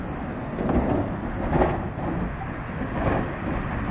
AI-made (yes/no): no